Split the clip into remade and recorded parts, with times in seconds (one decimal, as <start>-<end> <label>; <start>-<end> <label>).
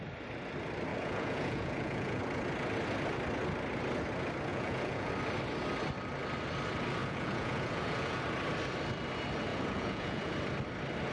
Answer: 0.0-0.9 recorded; 0.9-2.2 remade; 2.2-4.5 recorded; 4.5-5.1 remade; 5.1-7.0 recorded; 7.0-8.2 remade; 8.2-9.5 recorded; 9.5-10.3 remade; 10.3-11.1 recorded